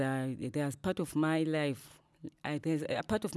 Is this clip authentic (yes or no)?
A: yes